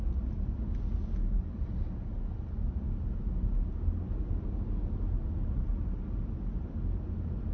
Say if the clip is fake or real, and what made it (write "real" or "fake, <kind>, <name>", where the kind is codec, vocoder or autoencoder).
real